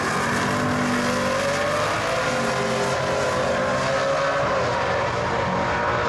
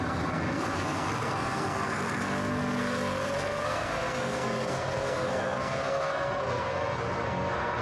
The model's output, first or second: second